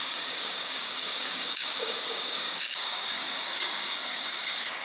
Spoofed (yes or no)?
yes